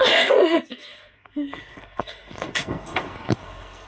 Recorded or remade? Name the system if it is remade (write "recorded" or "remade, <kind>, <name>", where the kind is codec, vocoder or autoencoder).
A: remade, codec, SNAC